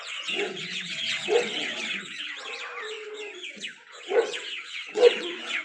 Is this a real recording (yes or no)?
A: no